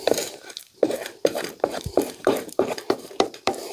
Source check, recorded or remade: remade